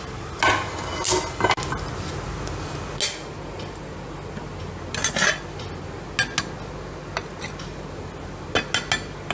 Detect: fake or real real